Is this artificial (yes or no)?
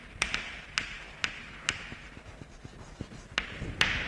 no